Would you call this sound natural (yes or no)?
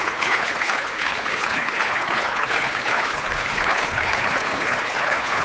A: no